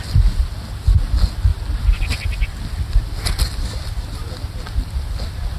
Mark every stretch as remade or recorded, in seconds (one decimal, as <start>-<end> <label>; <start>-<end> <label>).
0.0-5.6 recorded